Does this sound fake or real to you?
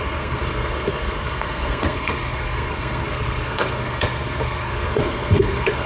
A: fake